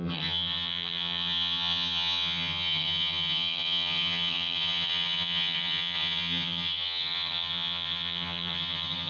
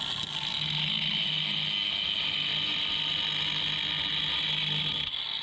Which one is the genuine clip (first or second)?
second